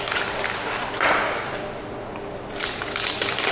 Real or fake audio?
real